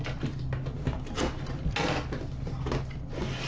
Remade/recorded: recorded